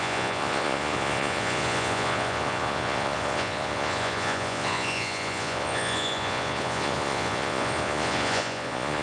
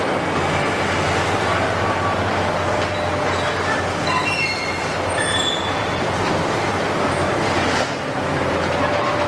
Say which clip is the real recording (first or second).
second